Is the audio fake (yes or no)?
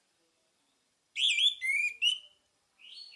yes